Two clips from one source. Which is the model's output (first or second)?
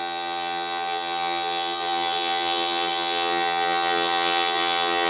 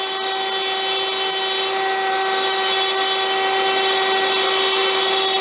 first